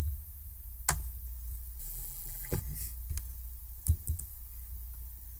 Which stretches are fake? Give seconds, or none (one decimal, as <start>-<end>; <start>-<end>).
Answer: 1.8-2.6